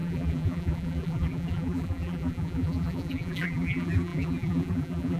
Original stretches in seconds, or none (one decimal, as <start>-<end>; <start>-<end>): none